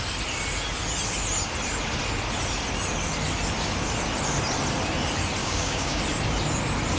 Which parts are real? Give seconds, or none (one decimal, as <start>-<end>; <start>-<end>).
0.0-5.4; 6.0-7.0